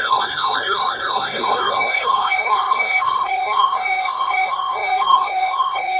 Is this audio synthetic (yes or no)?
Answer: yes